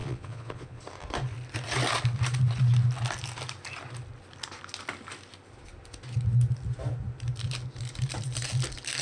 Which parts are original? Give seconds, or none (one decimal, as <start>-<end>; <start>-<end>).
0.8-9.0

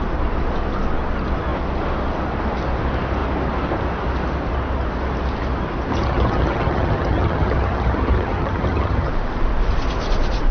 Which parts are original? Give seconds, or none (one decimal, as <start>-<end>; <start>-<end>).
0.0-5.9; 9.1-10.5

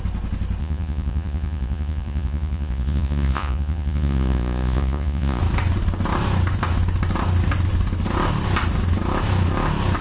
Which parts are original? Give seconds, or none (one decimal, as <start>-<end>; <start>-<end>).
0.0-0.6; 5.4-10.0

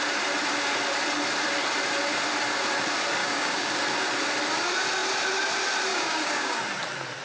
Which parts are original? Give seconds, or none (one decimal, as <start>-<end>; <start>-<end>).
0.0-3.2; 3.7-5.9; 6.6-7.2